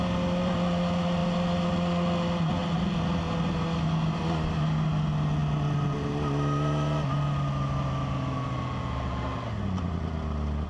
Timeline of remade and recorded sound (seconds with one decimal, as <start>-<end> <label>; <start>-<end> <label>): 0.0-10.7 recorded